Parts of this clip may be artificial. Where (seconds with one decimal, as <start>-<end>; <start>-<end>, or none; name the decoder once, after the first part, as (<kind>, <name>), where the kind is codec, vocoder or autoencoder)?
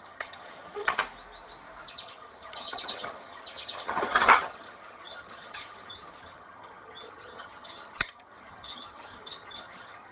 0.0-1.0 (vocoder, HiFi-GAN); 1.9-10.1